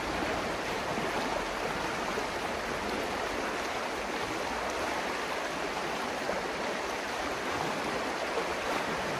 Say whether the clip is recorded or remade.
recorded